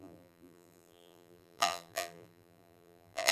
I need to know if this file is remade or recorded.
remade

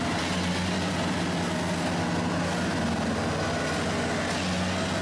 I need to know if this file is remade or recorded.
recorded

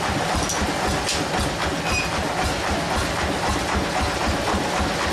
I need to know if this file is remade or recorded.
recorded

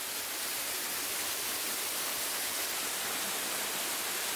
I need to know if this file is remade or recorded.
recorded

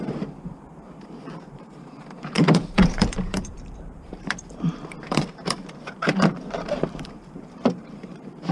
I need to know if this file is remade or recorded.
remade